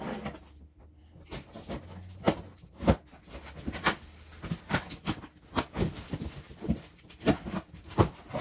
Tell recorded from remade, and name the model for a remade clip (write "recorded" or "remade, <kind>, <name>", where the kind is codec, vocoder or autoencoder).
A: recorded